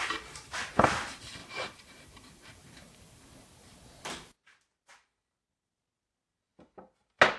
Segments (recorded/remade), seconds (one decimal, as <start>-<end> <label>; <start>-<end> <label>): 0.0-2.8 remade; 2.8-4.9 recorded; 4.9-6.5 remade; 6.5-7.4 recorded